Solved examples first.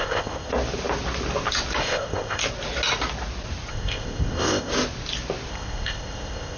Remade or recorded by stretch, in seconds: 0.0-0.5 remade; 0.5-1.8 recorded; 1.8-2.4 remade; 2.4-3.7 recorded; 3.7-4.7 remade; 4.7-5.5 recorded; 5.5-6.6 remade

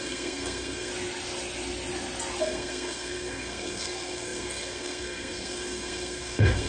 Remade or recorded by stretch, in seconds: 0.0-0.9 remade; 0.9-2.4 recorded; 2.4-6.7 remade

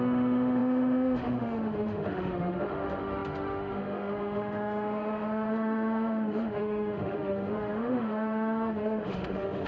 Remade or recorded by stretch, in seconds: 0.0-9.7 remade

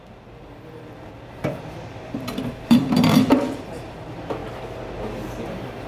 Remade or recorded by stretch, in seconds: 0.0-4.4 remade; 4.4-5.3 recorded; 5.3-5.9 remade

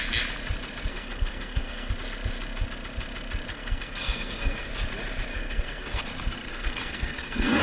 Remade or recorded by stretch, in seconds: 0.0-0.9 recorded; 0.9-1.9 remade; 1.9-3.5 recorded; 3.5-4.7 remade; 4.7-5.3 recorded; 5.3-6.0 remade; 6.0-6.5 recorded; 6.5-7.6 remade

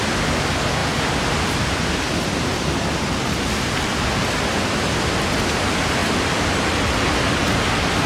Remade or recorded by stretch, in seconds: 0.0-8.1 recorded